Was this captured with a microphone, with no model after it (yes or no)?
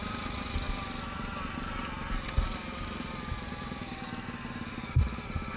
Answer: yes